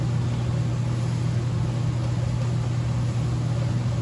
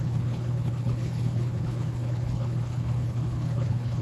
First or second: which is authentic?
first